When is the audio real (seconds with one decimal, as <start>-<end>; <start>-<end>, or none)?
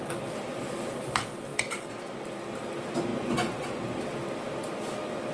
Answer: 0.0-3.1; 4.0-5.3